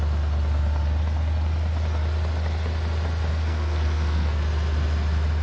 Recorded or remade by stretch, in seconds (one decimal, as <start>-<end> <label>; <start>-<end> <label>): 0.0-3.3 recorded; 3.3-4.4 remade; 4.4-5.4 recorded